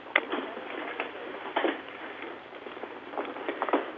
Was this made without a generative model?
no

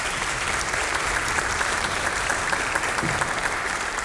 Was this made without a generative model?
no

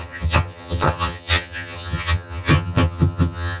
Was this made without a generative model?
no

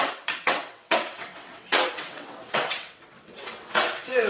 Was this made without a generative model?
no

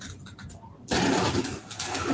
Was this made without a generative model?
no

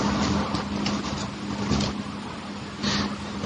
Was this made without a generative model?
yes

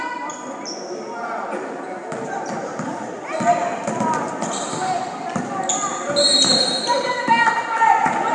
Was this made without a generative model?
yes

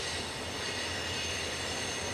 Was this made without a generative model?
yes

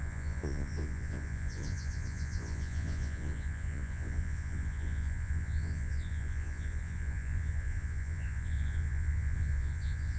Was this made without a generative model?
no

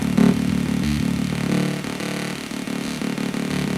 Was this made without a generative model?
yes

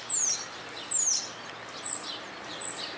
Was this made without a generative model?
yes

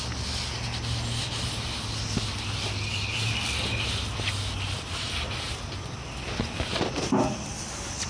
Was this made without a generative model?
yes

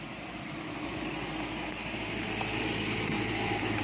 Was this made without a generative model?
yes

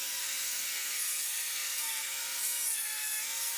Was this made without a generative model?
no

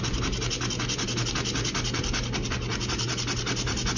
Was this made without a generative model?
yes